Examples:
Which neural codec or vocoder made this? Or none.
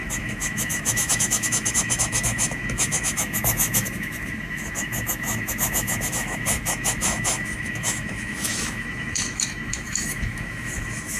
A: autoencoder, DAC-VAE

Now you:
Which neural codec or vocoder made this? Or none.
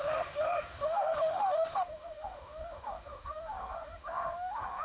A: autoencoder, DAC-VAE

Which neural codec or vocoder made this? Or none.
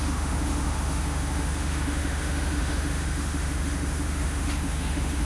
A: autoencoder, DAC-VAE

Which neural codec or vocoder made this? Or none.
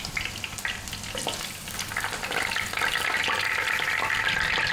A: none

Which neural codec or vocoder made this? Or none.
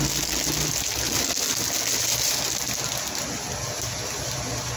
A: none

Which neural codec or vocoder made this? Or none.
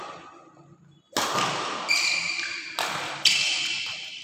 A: none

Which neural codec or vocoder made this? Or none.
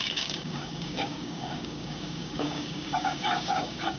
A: codec, DAC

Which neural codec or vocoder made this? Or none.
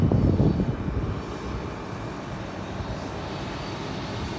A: none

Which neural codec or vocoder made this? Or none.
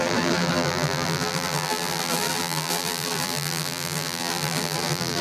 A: vocoder, BigVGAN v2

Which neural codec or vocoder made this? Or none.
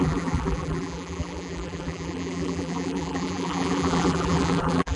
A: vocoder, BigVGAN v2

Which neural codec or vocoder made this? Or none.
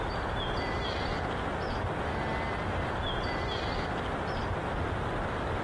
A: none